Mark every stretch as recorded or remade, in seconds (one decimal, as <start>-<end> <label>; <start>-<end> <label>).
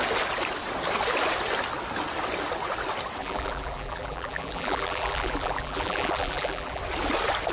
0.0-3.2 recorded; 3.2-6.8 remade; 6.8-7.5 recorded